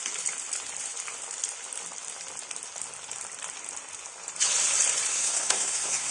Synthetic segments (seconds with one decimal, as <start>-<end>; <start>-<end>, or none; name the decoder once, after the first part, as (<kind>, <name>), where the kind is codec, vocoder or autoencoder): 5.1-6.1 (codec, SNAC)